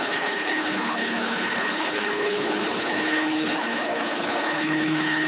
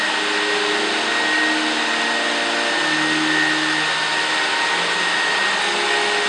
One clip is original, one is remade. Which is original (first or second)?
second